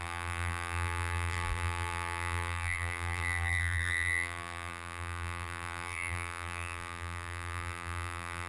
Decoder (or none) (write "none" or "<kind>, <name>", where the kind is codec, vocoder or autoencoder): vocoder, BigVGAN v2